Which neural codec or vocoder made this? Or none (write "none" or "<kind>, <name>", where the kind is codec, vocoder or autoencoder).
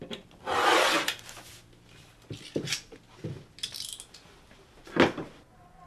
none